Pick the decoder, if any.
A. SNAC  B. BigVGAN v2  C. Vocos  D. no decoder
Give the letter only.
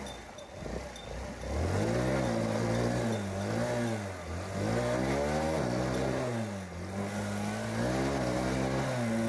D